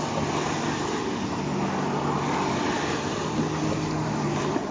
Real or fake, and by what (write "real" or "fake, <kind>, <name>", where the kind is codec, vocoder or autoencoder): real